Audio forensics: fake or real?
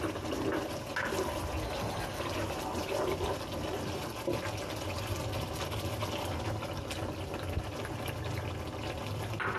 real